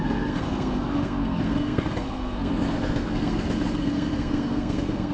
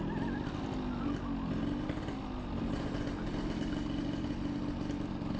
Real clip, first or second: second